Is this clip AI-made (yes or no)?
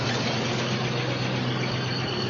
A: no